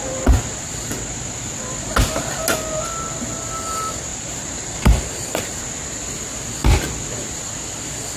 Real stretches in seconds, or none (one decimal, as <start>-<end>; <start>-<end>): 0.0-0.5; 1.2-4.1; 5.6-8.2